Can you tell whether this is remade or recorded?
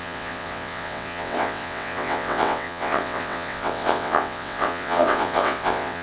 remade